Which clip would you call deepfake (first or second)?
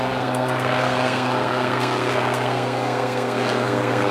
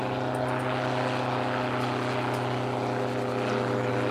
first